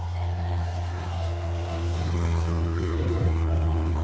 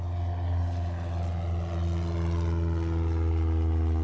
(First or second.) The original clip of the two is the second